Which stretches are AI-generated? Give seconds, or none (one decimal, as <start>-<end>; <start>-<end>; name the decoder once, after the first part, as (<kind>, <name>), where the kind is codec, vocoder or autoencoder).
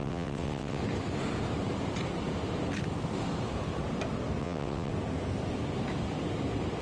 0.0-0.8 (vocoder, WaveNeXt); 4.4-4.9